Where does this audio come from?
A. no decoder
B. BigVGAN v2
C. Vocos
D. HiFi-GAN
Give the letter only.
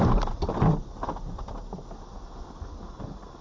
A